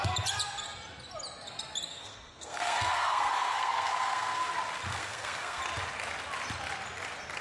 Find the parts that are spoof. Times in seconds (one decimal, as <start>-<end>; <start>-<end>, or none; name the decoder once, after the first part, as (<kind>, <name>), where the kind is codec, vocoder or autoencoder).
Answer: 1.9-4.5 (codec, SNAC); 4.9-5.6